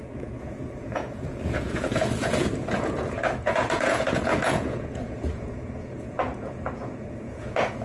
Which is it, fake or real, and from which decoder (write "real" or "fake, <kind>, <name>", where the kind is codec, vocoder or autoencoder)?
fake, vocoder, Vocos